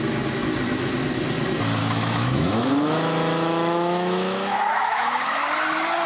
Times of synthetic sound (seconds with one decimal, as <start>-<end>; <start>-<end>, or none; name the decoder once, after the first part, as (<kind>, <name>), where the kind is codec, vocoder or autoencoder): 1.8-5.5 (autoencoder, DAC-VAE)